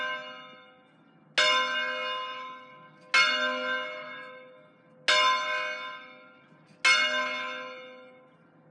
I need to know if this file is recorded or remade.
recorded